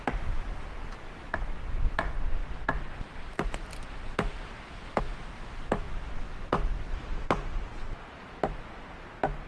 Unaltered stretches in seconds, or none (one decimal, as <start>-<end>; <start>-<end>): 0.0-9.5

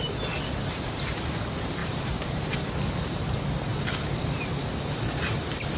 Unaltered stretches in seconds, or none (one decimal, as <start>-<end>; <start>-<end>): 0.0-1.8; 2.7-5.8

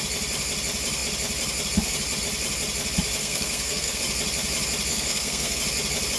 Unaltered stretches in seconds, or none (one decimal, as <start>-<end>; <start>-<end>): 0.0-3.2; 4.0-4.9; 5.6-6.2

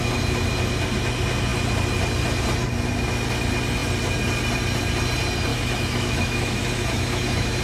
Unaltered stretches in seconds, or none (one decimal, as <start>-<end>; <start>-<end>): 0.0-5.5

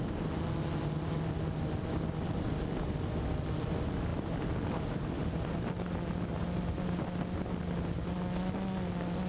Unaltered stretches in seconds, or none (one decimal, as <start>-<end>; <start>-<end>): 0.0-9.3